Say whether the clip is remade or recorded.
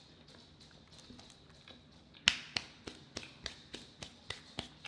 recorded